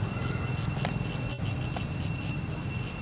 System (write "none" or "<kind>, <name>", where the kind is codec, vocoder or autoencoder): none